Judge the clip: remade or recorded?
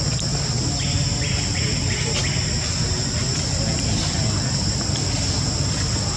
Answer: recorded